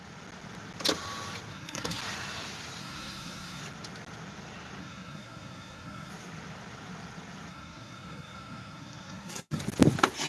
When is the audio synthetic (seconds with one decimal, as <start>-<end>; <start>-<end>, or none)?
1.5-2.0; 2.8-3.6; 4.8-6.1; 7.5-9.6

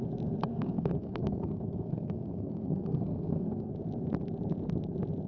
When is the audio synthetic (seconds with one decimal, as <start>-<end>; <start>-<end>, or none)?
0.5-3.7

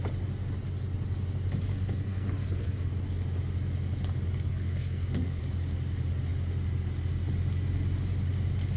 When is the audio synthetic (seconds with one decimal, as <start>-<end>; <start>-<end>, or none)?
1.7-2.9; 4.5-5.4

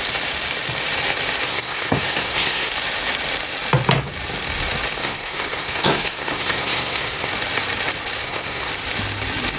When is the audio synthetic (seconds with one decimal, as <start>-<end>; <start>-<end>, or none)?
1.5-2.7; 5.0-7.3; 8.2-8.7

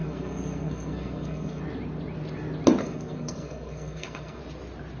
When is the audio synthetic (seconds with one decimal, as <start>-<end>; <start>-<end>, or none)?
0.0-1.6; 2.8-4.4

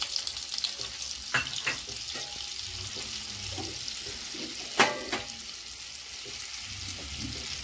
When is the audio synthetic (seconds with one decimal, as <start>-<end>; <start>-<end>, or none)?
none

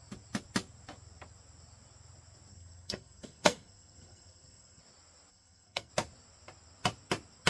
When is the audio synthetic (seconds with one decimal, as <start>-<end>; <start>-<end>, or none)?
2.5-4.8; 5.3-5.9